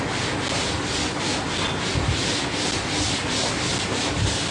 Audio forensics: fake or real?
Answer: real